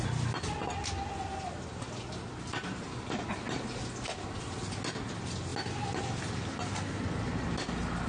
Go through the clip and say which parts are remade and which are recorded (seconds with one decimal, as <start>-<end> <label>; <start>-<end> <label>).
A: 0.0-8.1 recorded